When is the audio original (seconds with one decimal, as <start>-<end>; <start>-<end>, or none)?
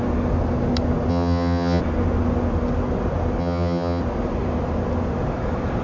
0.0-1.1; 1.8-3.4; 4.0-5.8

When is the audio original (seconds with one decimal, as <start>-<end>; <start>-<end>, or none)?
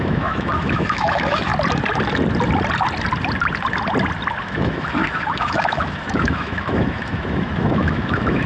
1.5-4.4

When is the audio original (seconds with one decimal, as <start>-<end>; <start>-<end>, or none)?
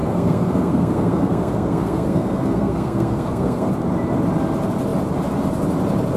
3.7-6.2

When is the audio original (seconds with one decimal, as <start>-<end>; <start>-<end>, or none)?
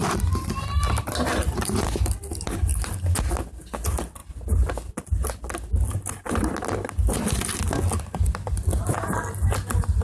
0.0-10.0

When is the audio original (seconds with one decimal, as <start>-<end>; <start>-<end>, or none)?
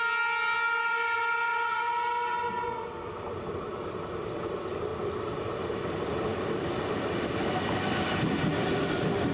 0.0-6.3; 7.3-9.3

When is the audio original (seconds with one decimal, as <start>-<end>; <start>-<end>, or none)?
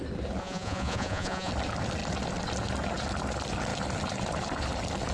0.0-0.4; 1.5-5.1